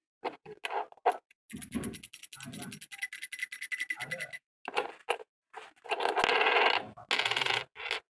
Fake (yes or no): no